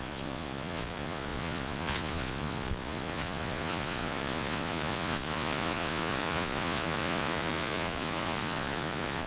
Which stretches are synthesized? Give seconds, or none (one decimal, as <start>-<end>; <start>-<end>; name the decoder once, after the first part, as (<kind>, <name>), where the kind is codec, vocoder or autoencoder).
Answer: 0.0-9.3 (vocoder, Vocos)